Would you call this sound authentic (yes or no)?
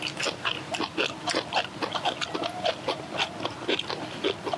yes